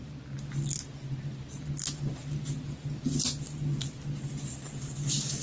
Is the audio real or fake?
real